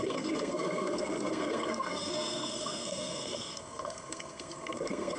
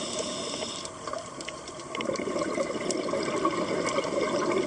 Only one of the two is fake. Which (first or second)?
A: first